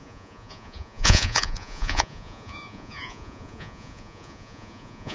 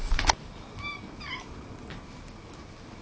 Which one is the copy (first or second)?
first